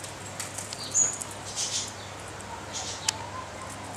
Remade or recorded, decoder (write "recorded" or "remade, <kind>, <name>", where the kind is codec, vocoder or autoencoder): recorded